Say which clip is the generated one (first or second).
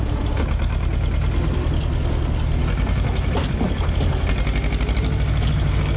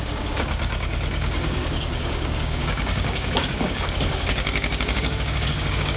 second